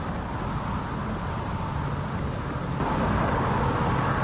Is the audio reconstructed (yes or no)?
no